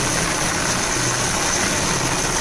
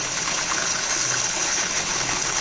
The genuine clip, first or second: first